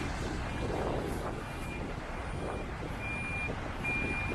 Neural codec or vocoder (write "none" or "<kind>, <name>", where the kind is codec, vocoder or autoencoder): none